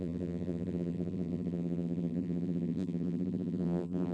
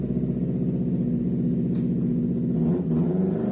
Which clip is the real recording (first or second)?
second